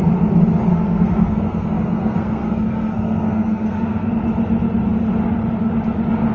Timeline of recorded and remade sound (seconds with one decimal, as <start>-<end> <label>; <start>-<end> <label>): 0.0-0.7 recorded; 0.7-4.1 remade; 4.1-6.3 recorded